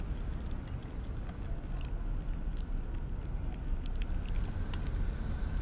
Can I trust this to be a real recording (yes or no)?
yes